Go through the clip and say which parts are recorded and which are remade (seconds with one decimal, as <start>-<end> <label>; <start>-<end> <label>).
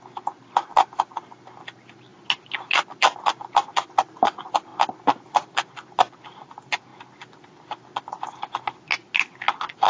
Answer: 0.0-9.9 recorded